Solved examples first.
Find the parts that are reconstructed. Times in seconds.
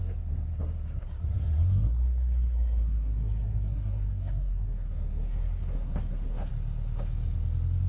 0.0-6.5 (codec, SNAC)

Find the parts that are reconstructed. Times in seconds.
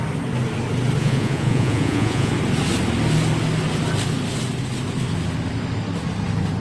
1.0-2.3 (vocoder, Vocos)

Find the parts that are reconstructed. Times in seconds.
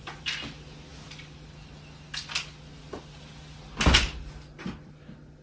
none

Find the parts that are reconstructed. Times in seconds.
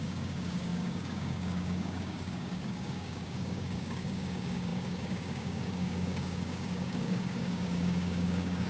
0.0-8.7 (codec, DAC)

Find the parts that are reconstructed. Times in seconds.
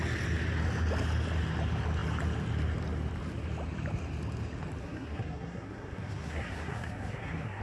4.8-7.6 (codec, SNAC)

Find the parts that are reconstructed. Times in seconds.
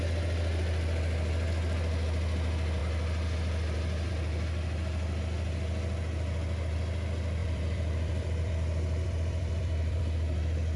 7.4-10.0 (vocoder, BigVGAN v2)